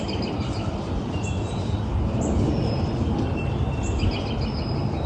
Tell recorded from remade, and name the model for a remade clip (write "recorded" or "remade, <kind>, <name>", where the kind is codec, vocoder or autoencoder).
recorded